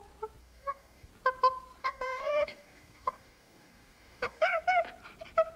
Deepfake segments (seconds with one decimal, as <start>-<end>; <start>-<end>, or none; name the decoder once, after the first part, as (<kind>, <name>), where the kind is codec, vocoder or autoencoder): 0.4-1.1 (codec, DAC); 1.8-4.6